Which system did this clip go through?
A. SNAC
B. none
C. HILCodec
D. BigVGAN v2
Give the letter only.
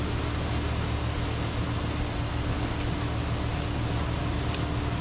B